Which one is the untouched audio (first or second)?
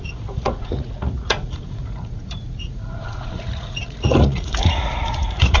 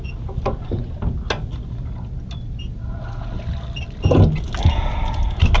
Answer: second